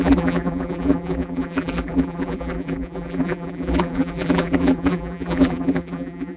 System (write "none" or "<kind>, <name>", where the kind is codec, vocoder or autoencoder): vocoder, BigVGAN v2